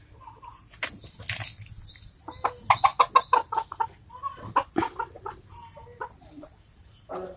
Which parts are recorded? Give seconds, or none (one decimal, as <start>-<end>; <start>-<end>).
0.0-7.4